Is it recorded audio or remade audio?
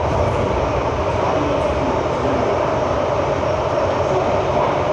recorded